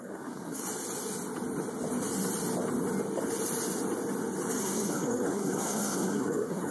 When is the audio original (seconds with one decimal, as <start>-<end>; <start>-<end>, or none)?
0.6-4.6

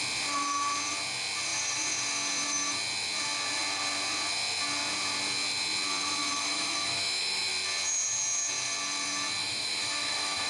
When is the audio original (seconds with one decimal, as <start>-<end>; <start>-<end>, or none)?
0.0-6.2; 7.5-9.4

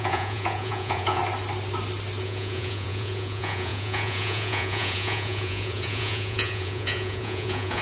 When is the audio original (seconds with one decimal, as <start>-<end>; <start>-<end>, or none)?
1.2-2.2